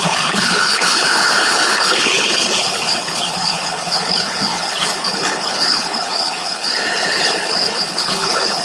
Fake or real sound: fake